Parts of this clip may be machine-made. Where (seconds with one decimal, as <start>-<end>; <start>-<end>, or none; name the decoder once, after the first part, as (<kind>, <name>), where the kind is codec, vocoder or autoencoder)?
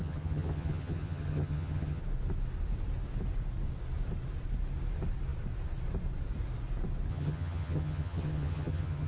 0.0-2.0 (vocoder, HiFi-GAN); 7.1-9.1